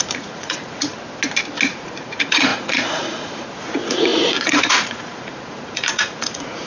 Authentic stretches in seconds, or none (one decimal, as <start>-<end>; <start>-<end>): 0.9-1.7

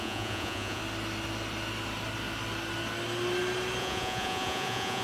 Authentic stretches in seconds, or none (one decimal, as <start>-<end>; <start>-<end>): 0.8-3.8